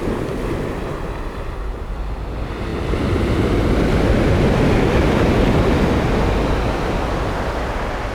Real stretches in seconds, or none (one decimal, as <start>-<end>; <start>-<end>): 0.0-8.1